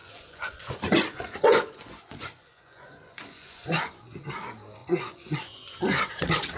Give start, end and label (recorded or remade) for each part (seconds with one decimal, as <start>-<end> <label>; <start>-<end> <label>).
0.0-4.0 remade; 4.0-4.8 recorded; 4.8-6.1 remade; 6.1-6.6 recorded